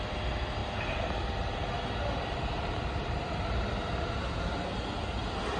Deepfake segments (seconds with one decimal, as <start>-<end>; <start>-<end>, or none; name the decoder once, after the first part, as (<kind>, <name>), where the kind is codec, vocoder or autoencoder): none